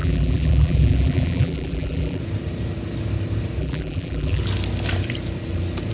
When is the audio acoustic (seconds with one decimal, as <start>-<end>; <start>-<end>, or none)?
2.2-3.6; 4.4-5.9